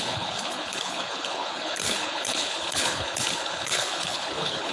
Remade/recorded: remade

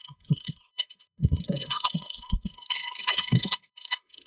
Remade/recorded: remade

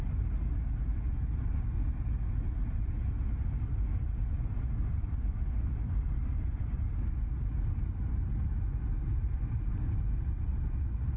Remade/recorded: recorded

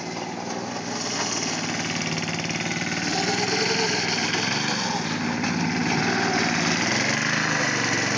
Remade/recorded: recorded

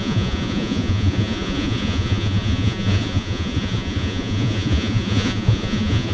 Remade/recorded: remade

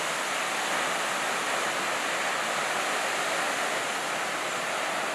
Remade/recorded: recorded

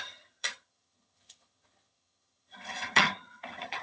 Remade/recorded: remade